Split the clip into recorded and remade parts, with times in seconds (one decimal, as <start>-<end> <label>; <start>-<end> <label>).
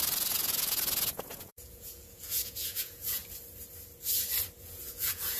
0.0-3.2 remade; 3.2-4.6 recorded; 4.6-5.4 remade